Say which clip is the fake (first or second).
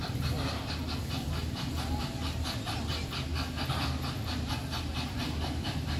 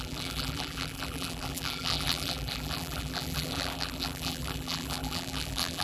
second